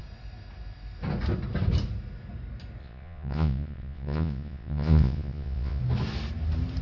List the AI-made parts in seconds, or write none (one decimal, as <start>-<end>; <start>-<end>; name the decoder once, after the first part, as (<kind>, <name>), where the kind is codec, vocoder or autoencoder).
2.8-5.8 (vocoder, Vocos)